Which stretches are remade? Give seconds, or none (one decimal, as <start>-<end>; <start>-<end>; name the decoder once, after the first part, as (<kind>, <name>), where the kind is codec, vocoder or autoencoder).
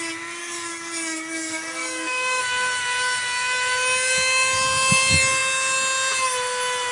0.4-2.4 (codec, DAC)